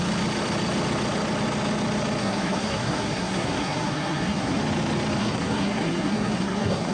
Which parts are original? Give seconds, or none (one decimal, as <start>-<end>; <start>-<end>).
0.0-2.2; 4.6-5.2